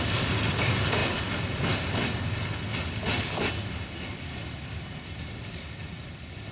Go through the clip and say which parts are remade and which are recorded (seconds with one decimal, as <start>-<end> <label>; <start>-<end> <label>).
0.0-6.5 recorded